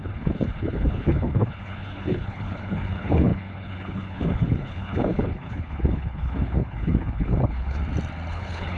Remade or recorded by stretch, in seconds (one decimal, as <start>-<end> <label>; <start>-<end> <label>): 0.0-7.8 remade; 7.8-8.3 recorded; 8.3-8.8 remade